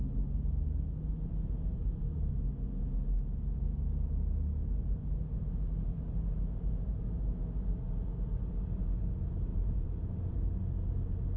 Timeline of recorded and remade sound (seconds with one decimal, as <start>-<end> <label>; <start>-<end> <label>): 0.0-1.7 recorded; 1.7-2.2 remade; 2.2-4.8 recorded; 4.8-7.3 remade; 7.3-9.5 recorded; 9.5-10.3 remade; 10.3-11.4 recorded